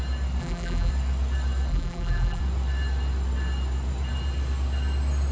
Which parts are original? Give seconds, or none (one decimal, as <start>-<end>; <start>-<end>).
0.0-0.4; 0.9-1.7; 2.4-5.3